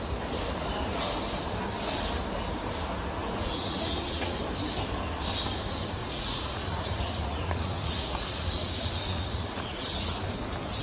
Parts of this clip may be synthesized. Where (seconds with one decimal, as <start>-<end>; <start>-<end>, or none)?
3.2-4.4; 6.0-10.2